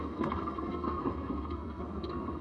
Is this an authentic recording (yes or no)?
no